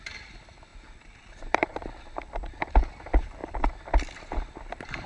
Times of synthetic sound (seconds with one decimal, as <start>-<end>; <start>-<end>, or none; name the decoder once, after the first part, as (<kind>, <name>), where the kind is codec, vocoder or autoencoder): none